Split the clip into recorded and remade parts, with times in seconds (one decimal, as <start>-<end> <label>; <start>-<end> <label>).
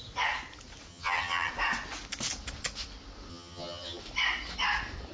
0.0-0.9 recorded; 0.9-1.5 remade; 1.5-3.3 recorded; 3.3-4.0 remade; 4.0-5.1 recorded